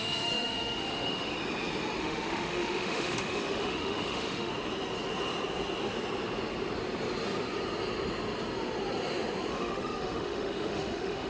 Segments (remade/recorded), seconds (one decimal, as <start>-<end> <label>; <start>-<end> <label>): 0.0-1.3 remade; 1.3-2.0 recorded; 2.0-4.5 remade; 4.5-9.5 recorded; 9.5-11.3 remade